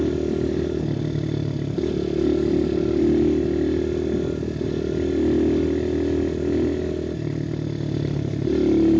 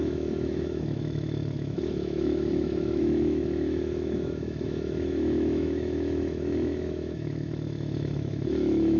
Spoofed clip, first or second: second